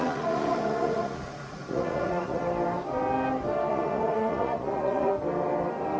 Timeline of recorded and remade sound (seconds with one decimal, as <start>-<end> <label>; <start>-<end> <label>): 0.0-2.4 remade; 2.4-3.7 recorded; 3.7-5.1 remade; 5.1-6.0 recorded